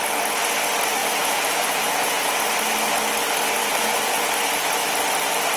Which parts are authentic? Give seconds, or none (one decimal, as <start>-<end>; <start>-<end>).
0.0-1.0; 2.4-3.6; 4.3-5.6